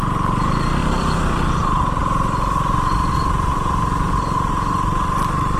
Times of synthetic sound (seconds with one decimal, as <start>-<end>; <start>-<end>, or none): 0.8-1.8